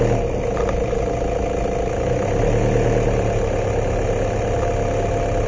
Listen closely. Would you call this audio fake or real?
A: real